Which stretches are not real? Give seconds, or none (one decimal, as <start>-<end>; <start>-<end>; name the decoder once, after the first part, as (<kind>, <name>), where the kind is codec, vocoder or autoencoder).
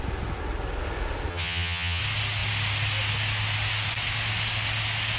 1.3-2.0 (vocoder, HiFi-GAN)